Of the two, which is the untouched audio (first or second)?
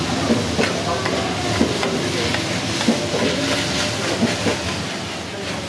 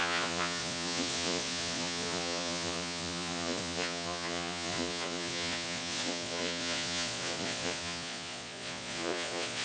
first